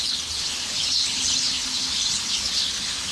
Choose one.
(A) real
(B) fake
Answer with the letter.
B